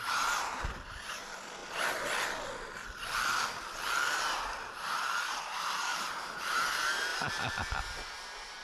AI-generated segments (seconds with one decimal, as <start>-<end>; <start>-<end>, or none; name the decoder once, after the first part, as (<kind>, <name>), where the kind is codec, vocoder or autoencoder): 0.0-1.6 (vocoder, BigVGAN v2); 4.7-8.6